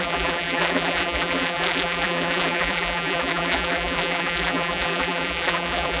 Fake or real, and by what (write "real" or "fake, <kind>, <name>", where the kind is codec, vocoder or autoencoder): fake, vocoder, BigVGAN v2